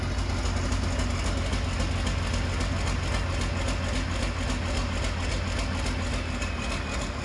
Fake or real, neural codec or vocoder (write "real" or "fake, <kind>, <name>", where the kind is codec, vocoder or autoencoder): real